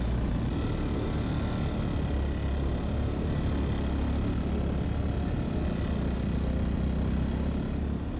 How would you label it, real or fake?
real